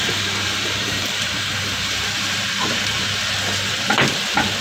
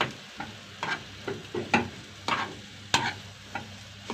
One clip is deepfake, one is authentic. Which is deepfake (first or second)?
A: first